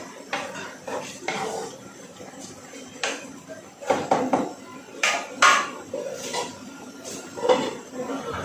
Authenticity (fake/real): fake